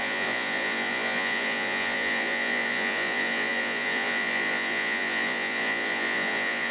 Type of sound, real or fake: fake